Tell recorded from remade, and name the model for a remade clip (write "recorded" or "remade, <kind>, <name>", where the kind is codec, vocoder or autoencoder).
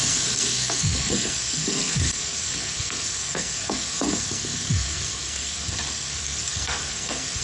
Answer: remade, codec, SNAC